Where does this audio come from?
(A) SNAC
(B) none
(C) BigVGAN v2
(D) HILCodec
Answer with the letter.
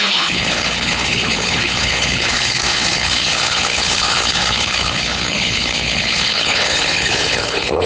D